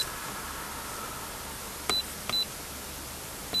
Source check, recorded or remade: recorded